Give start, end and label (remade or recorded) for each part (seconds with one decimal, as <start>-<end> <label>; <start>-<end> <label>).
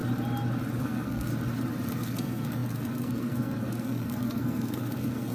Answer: 0.0-0.8 recorded; 0.8-1.3 remade; 1.3-1.9 recorded; 1.9-5.3 remade